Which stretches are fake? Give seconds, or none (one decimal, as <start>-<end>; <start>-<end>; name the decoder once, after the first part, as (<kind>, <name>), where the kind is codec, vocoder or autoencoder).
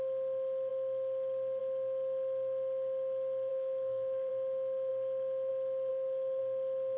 3.5-4.3 (codec, SNAC); 5.9-6.4